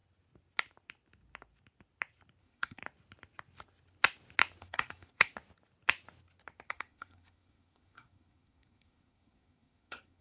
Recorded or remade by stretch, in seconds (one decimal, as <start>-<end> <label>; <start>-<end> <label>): 0.0-2.4 recorded; 2.4-2.8 remade; 2.8-4.6 recorded; 4.6-5.3 remade; 5.3-6.7 recorded; 6.7-10.2 remade